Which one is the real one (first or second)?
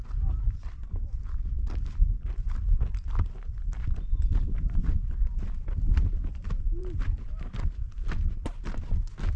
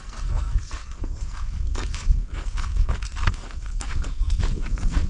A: first